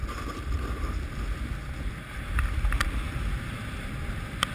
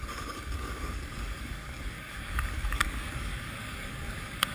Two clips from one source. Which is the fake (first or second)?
second